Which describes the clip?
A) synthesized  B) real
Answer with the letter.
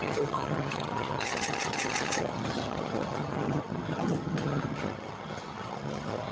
A